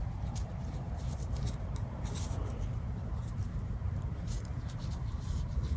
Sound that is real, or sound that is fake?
fake